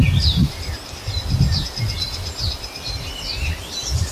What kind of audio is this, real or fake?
real